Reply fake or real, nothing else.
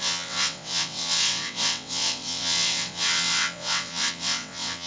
fake